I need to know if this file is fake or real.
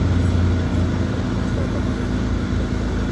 real